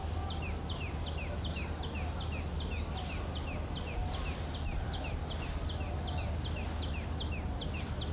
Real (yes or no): yes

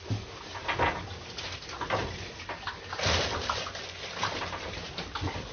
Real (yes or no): yes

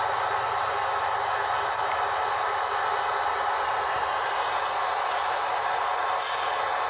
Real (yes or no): yes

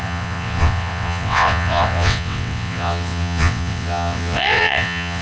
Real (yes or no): no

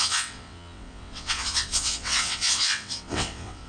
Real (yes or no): no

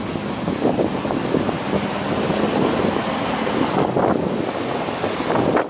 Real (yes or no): yes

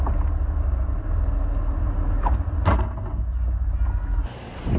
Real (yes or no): yes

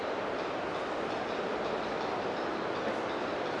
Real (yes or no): yes